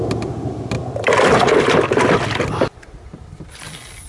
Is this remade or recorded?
recorded